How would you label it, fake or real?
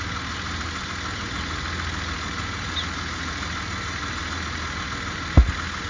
real